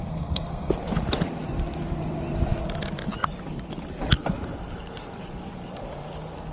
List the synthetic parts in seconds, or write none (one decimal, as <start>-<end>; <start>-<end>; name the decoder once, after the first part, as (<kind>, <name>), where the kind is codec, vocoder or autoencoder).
0.0-0.7 (codec, SNAC)